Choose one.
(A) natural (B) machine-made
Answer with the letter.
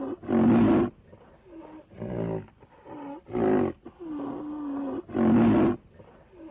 A